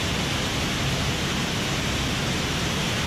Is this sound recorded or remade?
recorded